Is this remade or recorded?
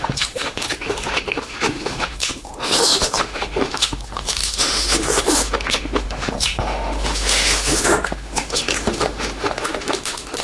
remade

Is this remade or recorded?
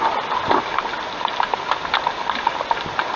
recorded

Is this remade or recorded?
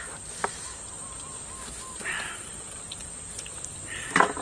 recorded